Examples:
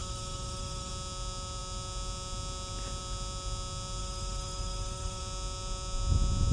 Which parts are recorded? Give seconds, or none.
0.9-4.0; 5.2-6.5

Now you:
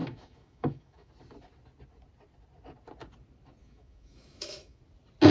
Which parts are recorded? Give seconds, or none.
1.1-3.6; 4.8-5.3